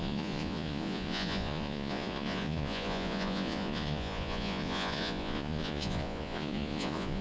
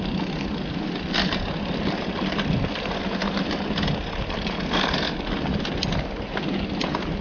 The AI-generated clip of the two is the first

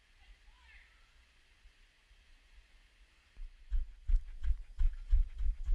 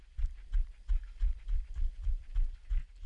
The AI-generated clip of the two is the first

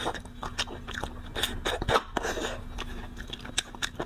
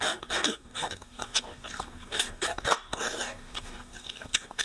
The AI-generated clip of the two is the second